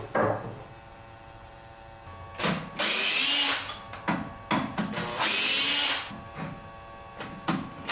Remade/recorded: recorded